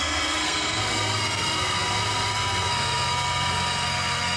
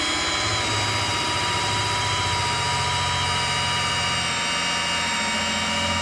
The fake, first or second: first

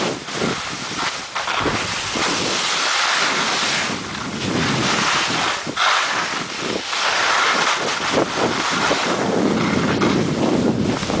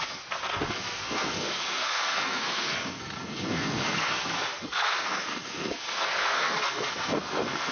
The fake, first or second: second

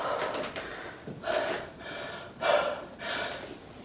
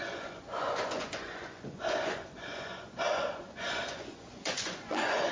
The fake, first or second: second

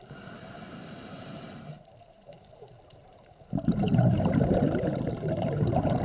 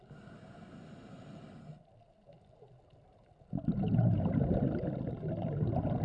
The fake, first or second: first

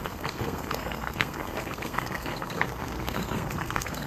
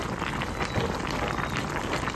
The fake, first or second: first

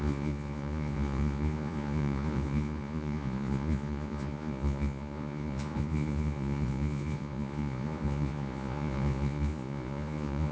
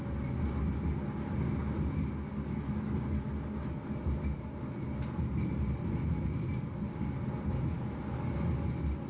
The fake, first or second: first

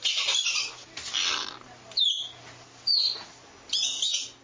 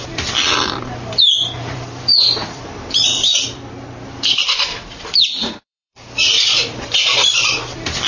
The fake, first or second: second